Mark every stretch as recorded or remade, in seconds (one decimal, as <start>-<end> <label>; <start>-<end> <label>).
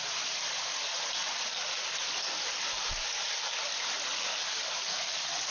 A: 0.0-5.5 recorded